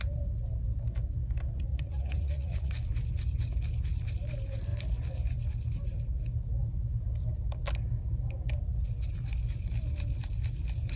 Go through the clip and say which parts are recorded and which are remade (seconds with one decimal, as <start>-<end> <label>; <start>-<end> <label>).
0.0-1.7 recorded; 1.7-2.7 remade; 2.7-11.0 recorded